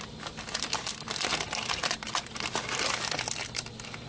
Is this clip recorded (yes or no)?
yes